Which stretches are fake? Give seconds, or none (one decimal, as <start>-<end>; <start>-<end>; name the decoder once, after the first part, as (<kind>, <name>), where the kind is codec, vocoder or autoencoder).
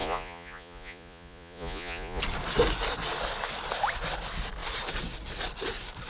0.0-2.2 (vocoder, Vocos)